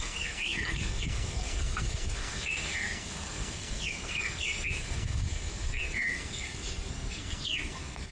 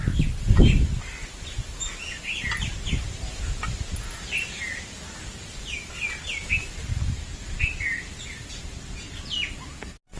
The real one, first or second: second